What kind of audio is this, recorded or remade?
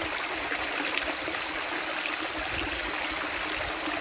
recorded